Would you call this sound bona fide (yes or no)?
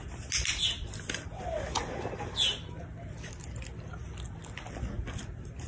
yes